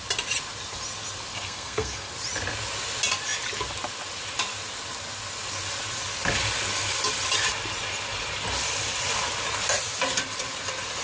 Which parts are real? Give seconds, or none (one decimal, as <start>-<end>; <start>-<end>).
0.0-1.3; 2.1-11.0